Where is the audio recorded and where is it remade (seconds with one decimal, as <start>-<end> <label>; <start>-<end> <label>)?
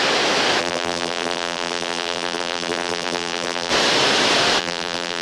0.0-0.6 recorded; 0.6-3.7 remade; 3.7-4.6 recorded; 4.6-5.2 remade